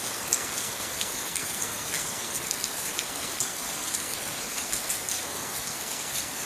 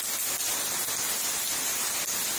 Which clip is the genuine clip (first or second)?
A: second